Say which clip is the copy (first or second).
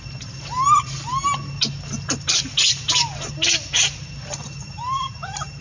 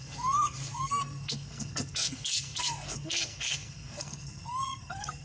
second